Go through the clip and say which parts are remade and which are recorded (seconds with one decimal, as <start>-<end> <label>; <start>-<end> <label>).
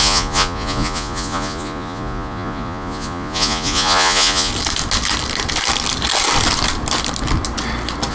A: 0.0-4.5 remade; 4.5-8.1 recorded